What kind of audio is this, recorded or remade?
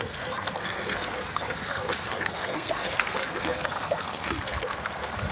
remade